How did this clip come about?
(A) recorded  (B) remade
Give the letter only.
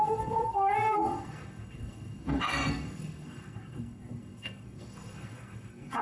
B